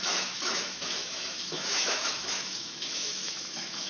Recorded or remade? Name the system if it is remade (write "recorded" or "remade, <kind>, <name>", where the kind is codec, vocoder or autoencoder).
remade, autoencoder, DAC-VAE